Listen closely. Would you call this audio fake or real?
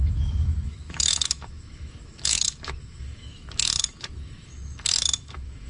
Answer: fake